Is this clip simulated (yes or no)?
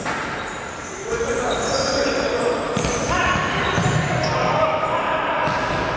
no